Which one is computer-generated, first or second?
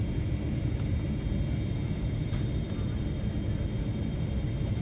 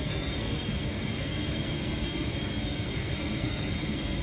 second